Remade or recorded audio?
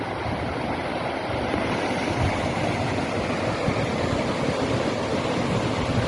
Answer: recorded